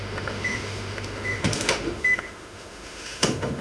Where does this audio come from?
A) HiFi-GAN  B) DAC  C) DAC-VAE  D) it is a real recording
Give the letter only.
C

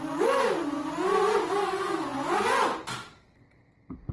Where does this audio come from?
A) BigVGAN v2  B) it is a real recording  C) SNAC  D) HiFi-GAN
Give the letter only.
B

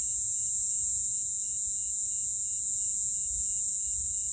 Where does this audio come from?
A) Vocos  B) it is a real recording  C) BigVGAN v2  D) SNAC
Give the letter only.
B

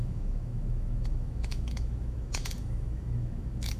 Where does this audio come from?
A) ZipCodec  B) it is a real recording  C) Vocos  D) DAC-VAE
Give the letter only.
D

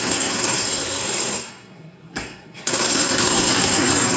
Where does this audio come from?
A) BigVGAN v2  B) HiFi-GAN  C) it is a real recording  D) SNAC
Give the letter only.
D